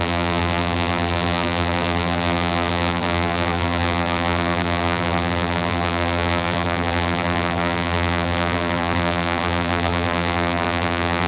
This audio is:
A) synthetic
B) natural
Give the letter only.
A